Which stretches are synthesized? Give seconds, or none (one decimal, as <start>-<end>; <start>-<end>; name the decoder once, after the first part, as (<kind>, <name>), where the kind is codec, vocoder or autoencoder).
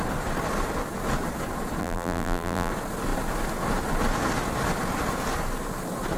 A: 1.8-2.7 (vocoder, BigVGAN v2)